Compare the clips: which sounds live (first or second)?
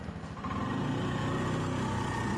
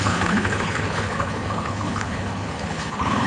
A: first